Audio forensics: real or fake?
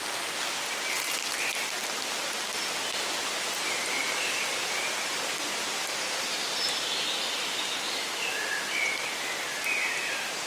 real